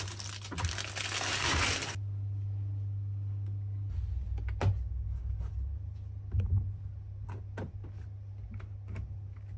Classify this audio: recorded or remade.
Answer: recorded